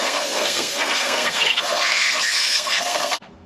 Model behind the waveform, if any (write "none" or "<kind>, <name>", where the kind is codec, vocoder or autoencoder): codec, SNAC